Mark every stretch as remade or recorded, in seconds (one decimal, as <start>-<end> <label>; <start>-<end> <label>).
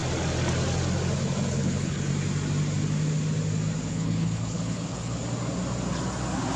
0.0-1.5 recorded; 1.5-2.1 remade; 2.1-3.9 recorded; 3.9-5.2 remade; 5.2-6.6 recorded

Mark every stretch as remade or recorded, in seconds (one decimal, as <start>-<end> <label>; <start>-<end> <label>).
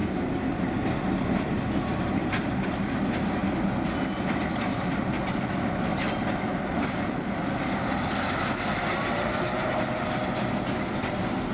0.0-11.5 recorded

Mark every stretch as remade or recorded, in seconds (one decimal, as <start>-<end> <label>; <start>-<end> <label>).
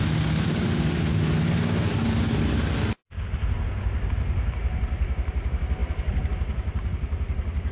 0.0-7.7 recorded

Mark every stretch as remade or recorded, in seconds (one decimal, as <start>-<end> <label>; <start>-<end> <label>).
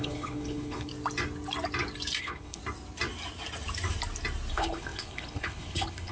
0.0-0.9 remade; 0.9-2.2 recorded; 2.2-2.6 remade; 2.6-4.5 recorded; 4.5-6.1 remade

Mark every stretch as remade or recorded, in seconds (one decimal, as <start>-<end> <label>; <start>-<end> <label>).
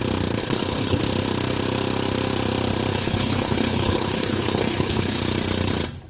0.0-0.4 recorded; 0.4-1.0 remade; 1.0-2.9 recorded; 2.9-5.2 remade; 5.2-6.1 recorded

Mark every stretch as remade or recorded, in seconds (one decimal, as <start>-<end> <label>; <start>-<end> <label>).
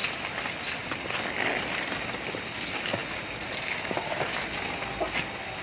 0.0-5.6 recorded